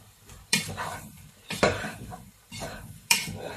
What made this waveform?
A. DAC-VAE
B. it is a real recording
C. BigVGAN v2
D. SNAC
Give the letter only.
C